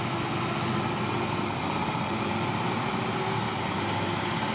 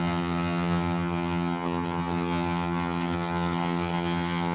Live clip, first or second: first